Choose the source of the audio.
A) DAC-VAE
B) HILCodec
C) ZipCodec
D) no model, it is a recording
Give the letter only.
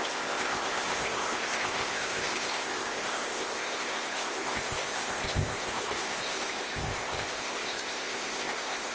C